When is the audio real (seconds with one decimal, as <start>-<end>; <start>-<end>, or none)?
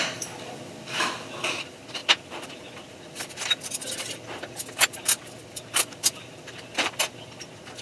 0.0-7.8